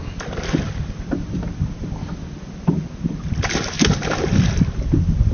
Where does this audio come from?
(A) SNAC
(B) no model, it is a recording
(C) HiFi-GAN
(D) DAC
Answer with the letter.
B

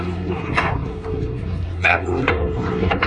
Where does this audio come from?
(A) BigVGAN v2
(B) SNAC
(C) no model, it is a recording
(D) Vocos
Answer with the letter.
B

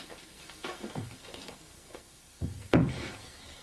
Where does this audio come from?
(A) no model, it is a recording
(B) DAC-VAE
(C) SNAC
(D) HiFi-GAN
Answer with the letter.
C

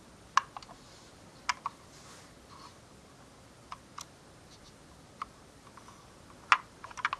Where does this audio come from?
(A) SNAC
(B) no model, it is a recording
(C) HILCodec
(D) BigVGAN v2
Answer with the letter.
B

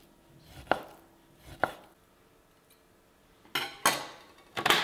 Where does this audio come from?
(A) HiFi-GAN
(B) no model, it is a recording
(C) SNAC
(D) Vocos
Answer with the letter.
B